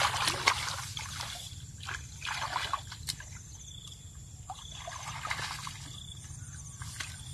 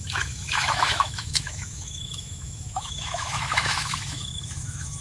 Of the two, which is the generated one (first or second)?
second